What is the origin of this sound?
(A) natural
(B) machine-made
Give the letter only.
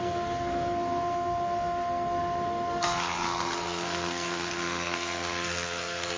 B